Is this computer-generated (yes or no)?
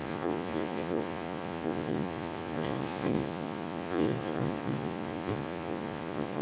yes